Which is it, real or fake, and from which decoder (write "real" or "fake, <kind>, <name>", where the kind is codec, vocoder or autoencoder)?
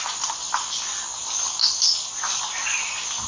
real